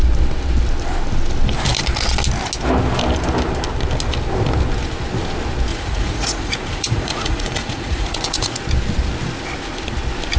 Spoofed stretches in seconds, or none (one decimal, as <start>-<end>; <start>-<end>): 5.7-8.6